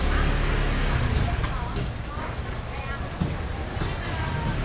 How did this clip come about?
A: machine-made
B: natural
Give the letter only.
B